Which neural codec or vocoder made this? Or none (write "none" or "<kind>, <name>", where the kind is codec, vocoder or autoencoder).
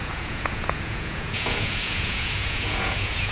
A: vocoder, Vocos